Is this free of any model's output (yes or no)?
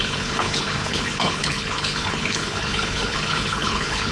no